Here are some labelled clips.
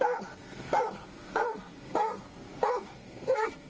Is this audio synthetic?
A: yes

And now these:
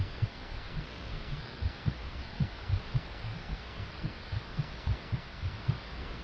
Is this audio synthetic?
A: yes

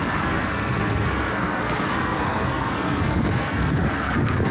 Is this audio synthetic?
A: yes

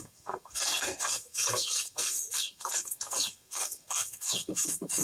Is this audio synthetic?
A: yes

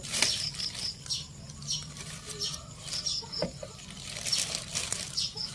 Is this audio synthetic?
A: no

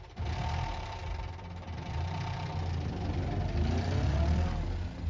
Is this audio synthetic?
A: no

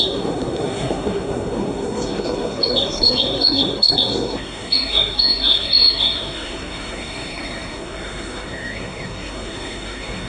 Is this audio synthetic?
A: yes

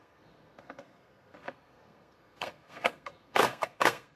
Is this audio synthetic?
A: yes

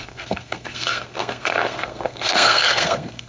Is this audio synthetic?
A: yes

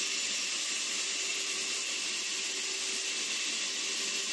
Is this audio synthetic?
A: no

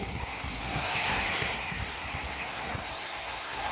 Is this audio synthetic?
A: yes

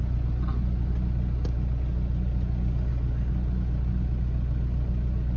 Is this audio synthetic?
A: no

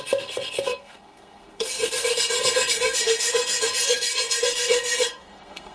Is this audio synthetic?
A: yes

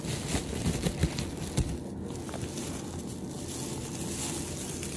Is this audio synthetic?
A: no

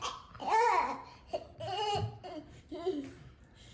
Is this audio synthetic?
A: no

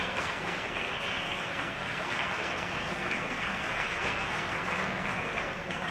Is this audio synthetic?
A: yes